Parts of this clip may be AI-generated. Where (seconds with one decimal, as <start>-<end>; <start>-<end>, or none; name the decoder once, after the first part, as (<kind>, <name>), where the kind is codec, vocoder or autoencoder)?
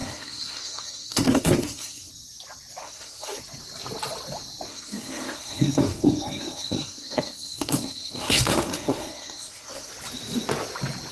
0.0-2.1 (codec, SNAC); 2.8-3.4; 4.7-9.9